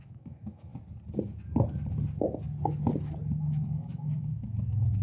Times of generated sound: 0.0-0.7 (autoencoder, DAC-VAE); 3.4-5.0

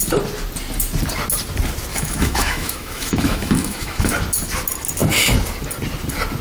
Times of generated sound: 1.9-4.1 (autoencoder, DAC-VAE)